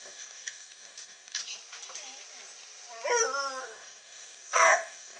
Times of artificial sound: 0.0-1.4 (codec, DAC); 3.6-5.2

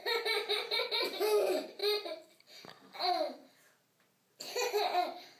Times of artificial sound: none

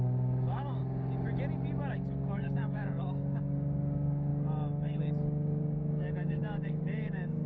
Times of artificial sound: 0.0-0.8 (codec, DAC); 1.9-7.5

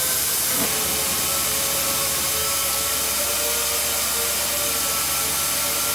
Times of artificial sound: 2.4-2.9 (codec, DAC)

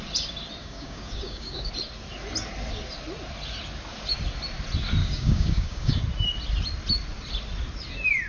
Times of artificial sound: 0.6-1.7 (codec, DAC); 5.0-6.0

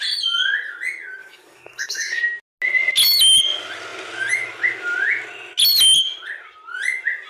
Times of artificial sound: 1.2-2.2 (codec, DAC)